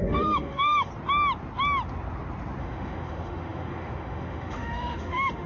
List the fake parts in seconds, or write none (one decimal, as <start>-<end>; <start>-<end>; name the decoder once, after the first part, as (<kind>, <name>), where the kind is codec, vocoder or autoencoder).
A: 0.0-0.9 (autoencoder, DAC-VAE); 2.6-5.5

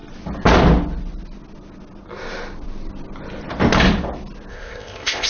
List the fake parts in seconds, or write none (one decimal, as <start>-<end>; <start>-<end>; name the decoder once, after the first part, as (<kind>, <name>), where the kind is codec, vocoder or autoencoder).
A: 4.5-5.3 (codec, ZipCodec)

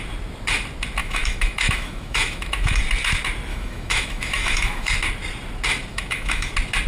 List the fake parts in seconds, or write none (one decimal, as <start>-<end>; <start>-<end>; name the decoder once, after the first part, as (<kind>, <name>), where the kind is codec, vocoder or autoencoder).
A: 1.0-2.8 (autoencoder, DAC-VAE); 3.5-4.9; 5.9-6.5